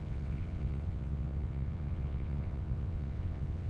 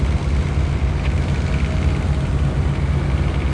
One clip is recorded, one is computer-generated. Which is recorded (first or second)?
second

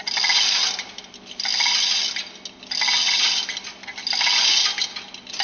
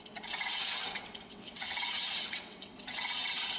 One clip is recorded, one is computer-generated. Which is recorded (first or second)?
first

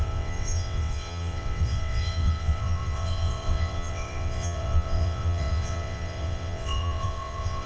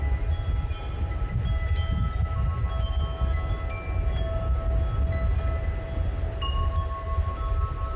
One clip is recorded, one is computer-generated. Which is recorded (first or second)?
second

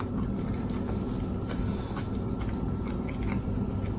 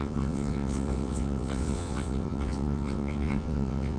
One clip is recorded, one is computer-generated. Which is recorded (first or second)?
first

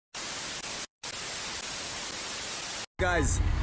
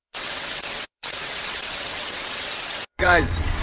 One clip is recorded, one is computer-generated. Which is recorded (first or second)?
first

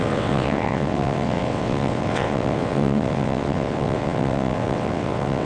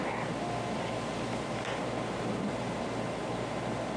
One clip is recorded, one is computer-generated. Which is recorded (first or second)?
second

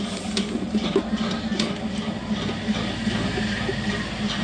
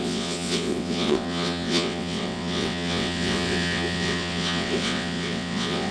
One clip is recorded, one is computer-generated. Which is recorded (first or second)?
first